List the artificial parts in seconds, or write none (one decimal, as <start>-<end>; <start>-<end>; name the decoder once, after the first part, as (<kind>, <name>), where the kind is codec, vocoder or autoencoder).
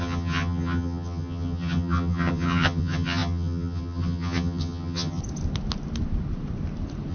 0.0-5.2 (vocoder, HiFi-GAN)